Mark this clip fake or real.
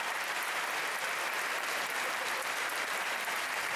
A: fake